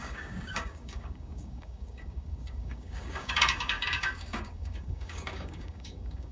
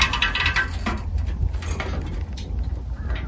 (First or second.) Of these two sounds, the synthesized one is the first